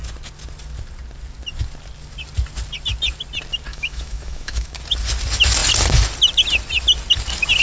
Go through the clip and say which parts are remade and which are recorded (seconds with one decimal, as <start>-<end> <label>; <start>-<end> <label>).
0.0-3.7 recorded; 3.7-4.8 remade; 4.8-7.6 recorded